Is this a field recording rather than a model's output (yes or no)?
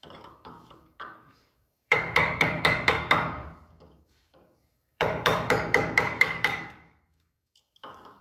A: no